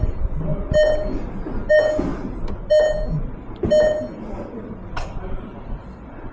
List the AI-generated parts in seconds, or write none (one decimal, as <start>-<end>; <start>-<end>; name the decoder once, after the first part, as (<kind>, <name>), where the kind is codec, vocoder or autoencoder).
none